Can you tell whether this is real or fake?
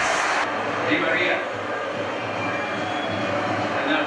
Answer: real